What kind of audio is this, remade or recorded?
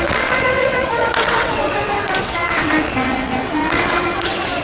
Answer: remade